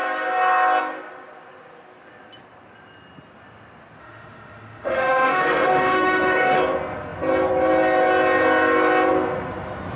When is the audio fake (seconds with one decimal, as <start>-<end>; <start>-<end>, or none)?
4.0-6.6